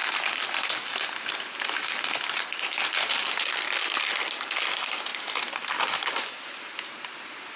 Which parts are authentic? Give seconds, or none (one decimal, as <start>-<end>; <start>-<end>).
0.0-7.6